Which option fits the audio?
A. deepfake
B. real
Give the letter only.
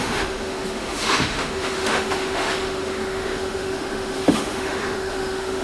A